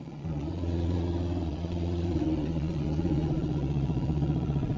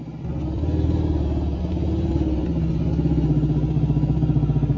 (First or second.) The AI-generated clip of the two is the first